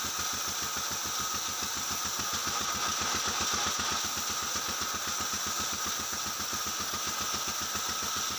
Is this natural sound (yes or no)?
yes